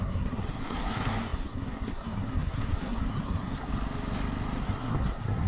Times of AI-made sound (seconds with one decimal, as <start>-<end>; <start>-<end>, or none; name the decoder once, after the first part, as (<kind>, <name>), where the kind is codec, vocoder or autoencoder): 0.0-3.7 (codec, SNAC); 4.6-5.5